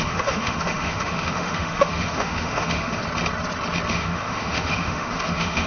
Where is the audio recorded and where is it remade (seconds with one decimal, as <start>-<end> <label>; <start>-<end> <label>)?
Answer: 0.0-3.0 remade; 3.0-3.9 recorded; 3.9-5.7 remade